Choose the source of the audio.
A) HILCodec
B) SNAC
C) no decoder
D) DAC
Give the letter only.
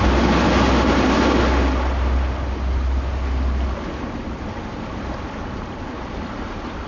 C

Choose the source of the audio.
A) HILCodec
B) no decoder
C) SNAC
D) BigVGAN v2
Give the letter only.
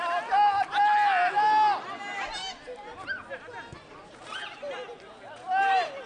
B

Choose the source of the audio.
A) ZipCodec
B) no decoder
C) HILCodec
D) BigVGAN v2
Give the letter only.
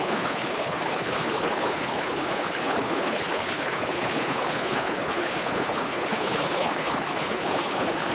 C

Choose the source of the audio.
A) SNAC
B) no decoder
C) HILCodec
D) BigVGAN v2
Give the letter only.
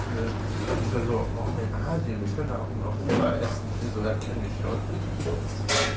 B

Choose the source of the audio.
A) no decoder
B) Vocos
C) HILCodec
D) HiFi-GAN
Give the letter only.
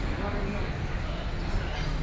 A